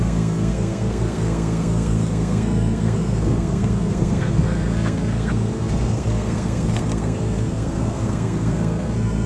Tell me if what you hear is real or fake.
fake